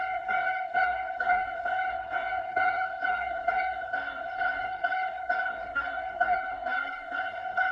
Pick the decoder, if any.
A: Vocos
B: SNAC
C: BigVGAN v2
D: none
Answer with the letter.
B